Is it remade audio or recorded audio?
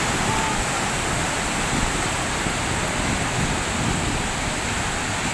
recorded